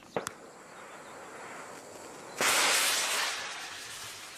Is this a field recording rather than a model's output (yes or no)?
yes